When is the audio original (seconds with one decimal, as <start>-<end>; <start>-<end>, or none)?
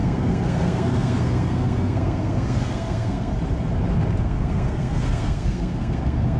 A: 3.3-4.2